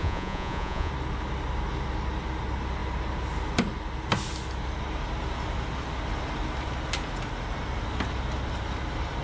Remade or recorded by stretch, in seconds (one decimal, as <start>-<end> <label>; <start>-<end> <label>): 0.0-0.9 remade; 0.9-9.2 recorded